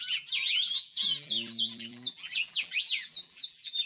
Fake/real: fake